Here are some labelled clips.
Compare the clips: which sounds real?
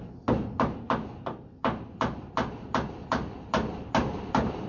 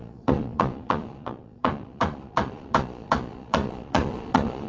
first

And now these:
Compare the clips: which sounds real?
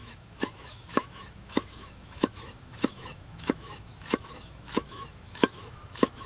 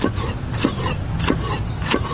second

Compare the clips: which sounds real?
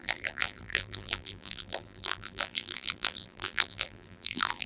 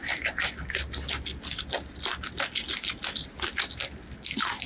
second